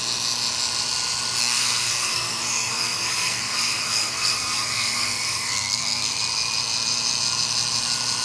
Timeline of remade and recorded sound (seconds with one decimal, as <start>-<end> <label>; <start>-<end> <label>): 0.0-1.4 recorded; 1.4-6.1 remade; 6.1-8.2 recorded